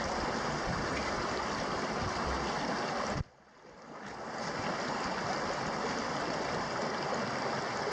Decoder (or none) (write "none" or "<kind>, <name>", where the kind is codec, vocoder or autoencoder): none